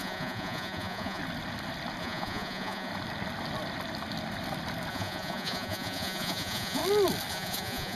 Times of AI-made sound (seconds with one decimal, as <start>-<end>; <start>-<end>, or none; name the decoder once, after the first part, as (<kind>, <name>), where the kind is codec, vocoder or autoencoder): 0.0-1.2 (vocoder, Vocos); 2.0-2.9; 4.9-6.8; 7.3-8.0